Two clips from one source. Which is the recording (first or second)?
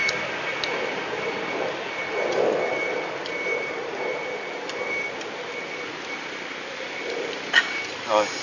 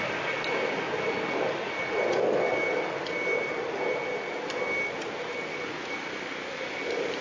second